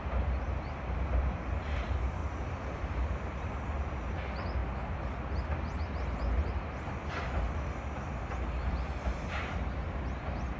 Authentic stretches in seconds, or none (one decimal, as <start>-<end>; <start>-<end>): 2.2-2.8; 4.6-8.3